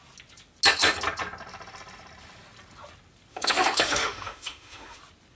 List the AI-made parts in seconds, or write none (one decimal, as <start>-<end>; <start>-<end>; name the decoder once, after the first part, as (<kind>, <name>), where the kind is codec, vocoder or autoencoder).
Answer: 3.3-5.0 (autoencoder, DAC-VAE)